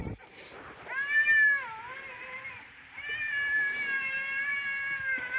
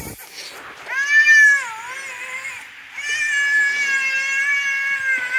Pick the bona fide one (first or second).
second